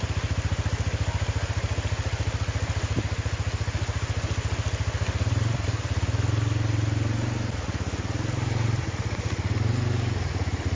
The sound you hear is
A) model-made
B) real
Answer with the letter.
B